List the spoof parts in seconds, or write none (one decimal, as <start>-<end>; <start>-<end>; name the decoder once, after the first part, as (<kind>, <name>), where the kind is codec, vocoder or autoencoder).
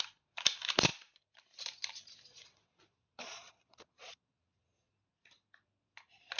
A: 2.3-4.9 (vocoder, Vocos)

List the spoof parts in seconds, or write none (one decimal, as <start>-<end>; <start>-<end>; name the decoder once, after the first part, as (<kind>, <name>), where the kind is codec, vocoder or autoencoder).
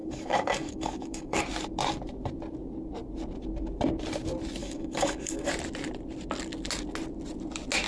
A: 0.0-1.4 (codec, DAC); 4.6-5.5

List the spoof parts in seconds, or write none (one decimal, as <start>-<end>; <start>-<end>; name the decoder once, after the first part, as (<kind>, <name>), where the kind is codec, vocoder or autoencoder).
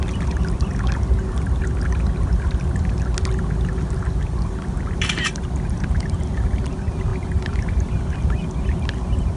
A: none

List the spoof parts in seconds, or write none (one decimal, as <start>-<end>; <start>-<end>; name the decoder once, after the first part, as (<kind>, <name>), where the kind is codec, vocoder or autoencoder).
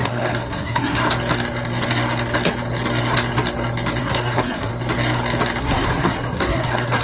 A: 0.0-1.0 (codec, SNAC); 4.0-4.7; 5.6-7.0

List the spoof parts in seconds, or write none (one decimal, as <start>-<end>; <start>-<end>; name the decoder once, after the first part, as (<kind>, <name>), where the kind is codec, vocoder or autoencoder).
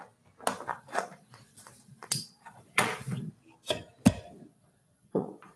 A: 0.7-3.3 (vocoder, Vocos); 4.5-5.6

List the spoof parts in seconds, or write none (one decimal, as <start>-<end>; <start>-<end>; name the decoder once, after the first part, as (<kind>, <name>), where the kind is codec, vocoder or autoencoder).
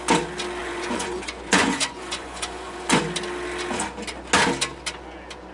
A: 0.6-3.0 (vocoder, Vocos)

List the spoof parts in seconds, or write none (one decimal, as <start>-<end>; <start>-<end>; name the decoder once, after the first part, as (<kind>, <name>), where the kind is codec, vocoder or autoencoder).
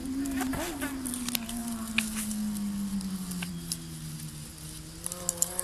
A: 0.0-0.5 (vocoder, BigVGAN v2)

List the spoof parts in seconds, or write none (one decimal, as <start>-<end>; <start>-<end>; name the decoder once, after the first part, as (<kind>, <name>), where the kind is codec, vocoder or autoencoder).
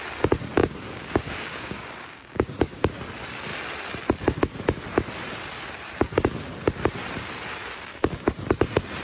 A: 0.6-2.9 (codec, DAC)